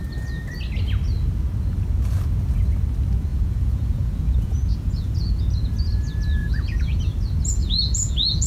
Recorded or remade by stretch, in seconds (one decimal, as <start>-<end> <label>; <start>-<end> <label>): 0.0-3.3 recorded; 3.3-5.4 remade; 5.4-6.4 recorded; 6.4-7.0 remade; 7.0-7.6 recorded; 7.6-8.5 remade